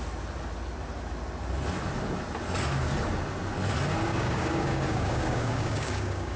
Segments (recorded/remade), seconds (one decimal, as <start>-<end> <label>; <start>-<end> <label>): 0.0-4.1 recorded; 4.1-6.4 remade